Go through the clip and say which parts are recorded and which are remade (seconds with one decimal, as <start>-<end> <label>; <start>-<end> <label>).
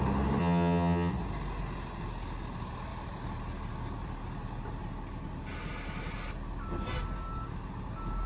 0.0-0.4 recorded; 0.4-1.1 remade; 1.1-8.3 recorded